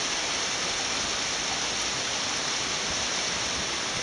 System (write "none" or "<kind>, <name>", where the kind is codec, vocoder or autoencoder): none